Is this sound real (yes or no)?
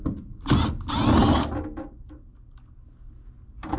yes